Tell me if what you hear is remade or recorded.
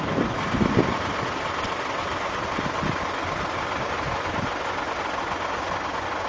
recorded